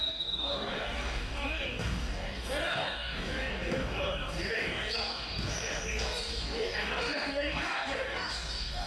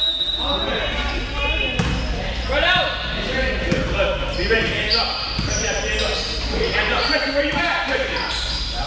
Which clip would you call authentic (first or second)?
second